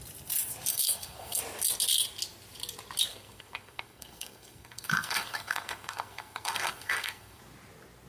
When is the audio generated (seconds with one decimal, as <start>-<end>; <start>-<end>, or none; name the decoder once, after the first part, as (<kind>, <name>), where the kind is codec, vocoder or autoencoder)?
0.7-1.4 (codec, SNAC); 3.1-7.4